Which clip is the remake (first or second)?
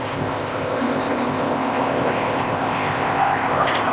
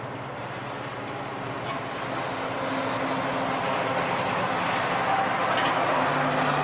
first